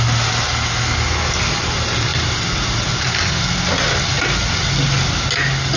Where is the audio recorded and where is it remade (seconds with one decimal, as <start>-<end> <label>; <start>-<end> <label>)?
0.0-5.8 recorded